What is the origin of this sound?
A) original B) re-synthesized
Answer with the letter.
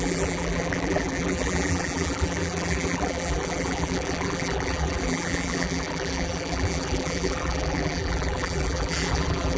B